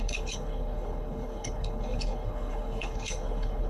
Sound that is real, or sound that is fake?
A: fake